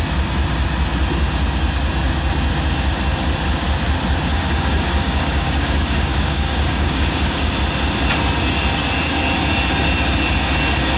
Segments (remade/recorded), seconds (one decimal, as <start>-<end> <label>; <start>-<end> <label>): 0.0-4.3 recorded; 4.3-7.5 remade; 7.5-11.0 recorded